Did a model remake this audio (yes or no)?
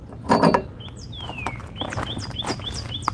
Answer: no